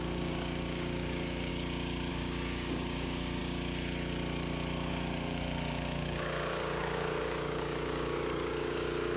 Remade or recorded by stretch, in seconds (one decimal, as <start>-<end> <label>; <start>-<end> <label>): 0.0-1.5 remade; 1.5-2.1 recorded; 2.1-3.4 remade; 3.4-4.9 recorded; 4.9-9.2 remade